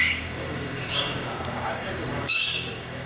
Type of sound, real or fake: fake